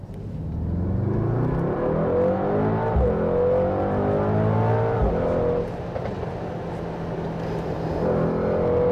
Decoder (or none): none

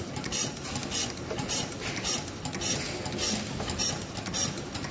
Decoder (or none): none